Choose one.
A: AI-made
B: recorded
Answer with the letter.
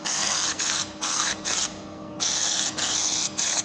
A